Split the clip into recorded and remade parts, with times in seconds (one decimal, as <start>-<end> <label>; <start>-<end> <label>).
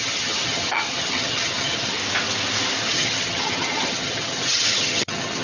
0.0-2.0 remade; 2.0-2.8 recorded; 2.8-5.4 remade